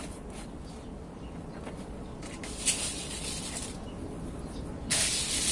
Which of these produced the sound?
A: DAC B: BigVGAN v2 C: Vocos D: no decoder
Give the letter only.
D